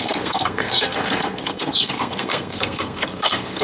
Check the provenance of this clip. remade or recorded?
remade